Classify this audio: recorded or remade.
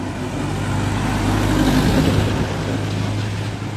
recorded